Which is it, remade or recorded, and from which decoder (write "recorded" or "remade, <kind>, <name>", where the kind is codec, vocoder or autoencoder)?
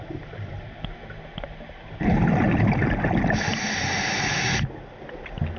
recorded